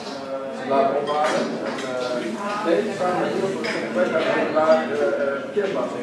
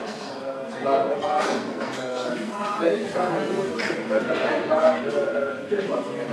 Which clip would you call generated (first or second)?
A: second